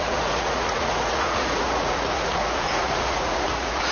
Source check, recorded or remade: remade